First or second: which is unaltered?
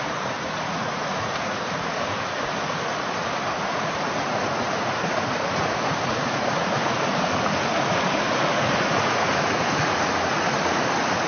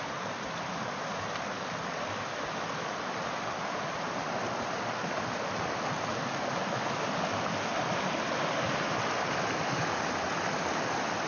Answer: second